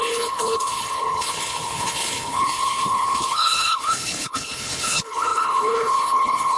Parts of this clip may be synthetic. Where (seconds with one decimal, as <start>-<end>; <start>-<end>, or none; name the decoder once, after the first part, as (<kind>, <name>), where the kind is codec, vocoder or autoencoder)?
0.0-6.6 (codec, HILCodec)